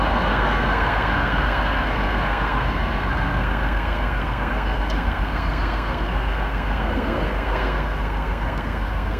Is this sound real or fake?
fake